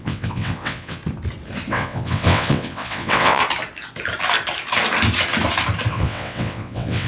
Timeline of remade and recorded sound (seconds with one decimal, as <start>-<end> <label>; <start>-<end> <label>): 0.0-1.0 remade; 1.0-1.7 recorded; 1.7-3.4 remade; 3.4-5.9 recorded; 5.9-7.1 remade